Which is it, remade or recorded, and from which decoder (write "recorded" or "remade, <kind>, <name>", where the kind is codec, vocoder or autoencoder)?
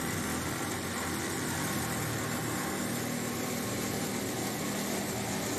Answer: recorded